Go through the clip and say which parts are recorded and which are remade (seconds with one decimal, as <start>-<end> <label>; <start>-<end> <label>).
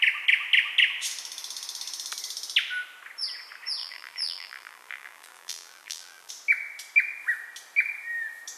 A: 0.0-3.8 recorded; 3.8-6.3 remade; 6.3-8.6 recorded